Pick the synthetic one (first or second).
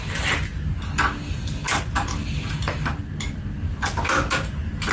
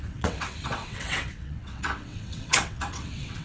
second